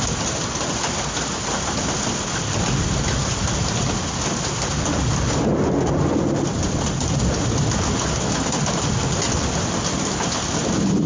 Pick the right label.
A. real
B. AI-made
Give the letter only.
A